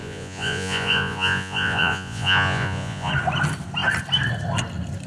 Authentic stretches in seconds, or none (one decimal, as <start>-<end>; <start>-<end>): 3.1-5.1